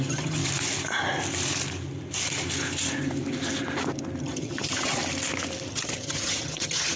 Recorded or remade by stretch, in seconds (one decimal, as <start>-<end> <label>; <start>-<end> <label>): 0.0-0.4 remade; 0.4-4.2 recorded; 4.2-5.0 remade; 5.0-5.7 recorded; 5.7-7.0 remade